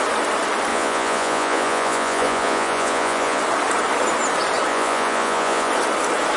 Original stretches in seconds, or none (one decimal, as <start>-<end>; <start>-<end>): 0.0-0.7; 3.4-4.7; 5.7-6.4